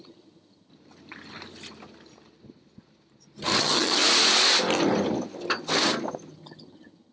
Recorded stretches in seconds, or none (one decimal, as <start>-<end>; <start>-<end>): 0.7-3.6; 4.0-6.3